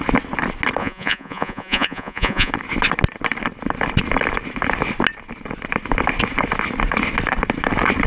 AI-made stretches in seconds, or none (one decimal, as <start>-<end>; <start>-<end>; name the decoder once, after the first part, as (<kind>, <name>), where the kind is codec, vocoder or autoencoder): 0.8-2.5 (vocoder, Vocos)